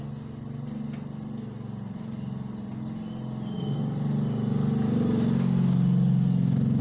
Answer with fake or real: real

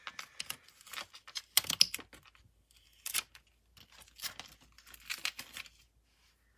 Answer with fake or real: real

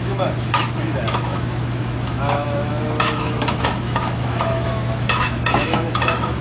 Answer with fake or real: fake